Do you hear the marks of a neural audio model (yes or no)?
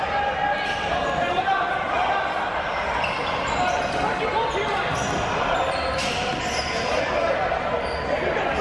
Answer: no